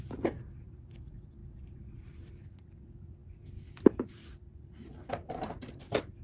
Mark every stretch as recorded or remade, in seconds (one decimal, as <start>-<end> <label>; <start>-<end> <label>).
0.0-6.2 recorded